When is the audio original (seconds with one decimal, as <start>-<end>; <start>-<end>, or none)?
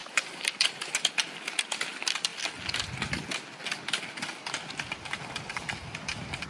1.1-6.5